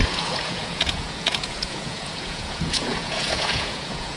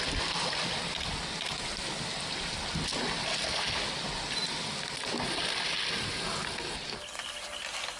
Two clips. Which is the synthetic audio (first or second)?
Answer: first